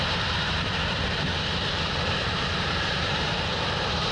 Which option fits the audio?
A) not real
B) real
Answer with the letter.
A